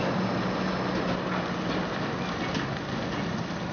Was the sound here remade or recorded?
recorded